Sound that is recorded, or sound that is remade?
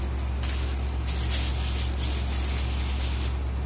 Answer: recorded